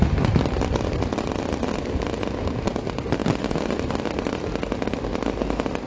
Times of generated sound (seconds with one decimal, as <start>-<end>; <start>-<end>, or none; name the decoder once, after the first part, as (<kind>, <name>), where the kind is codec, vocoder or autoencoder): none